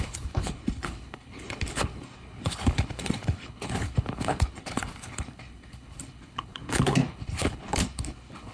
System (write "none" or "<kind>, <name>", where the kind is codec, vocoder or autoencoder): codec, HILCodec